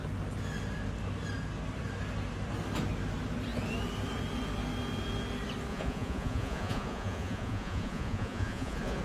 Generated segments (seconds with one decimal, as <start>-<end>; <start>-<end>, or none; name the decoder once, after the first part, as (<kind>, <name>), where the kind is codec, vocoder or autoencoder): 5.7-9.0 (vocoder, Vocos)